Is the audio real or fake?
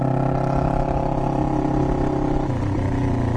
real